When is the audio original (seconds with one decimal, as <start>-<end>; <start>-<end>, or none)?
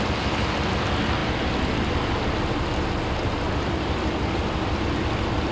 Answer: 0.0-5.5